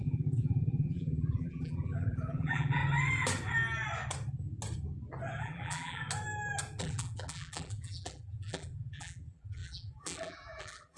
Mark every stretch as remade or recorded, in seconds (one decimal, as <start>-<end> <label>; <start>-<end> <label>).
0.0-2.8 remade; 2.8-5.4 recorded; 5.4-6.0 remade; 6.0-6.8 recorded; 6.8-11.0 remade